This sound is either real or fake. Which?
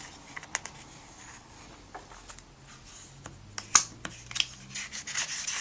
real